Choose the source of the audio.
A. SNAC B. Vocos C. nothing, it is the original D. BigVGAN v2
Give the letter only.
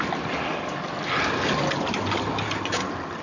C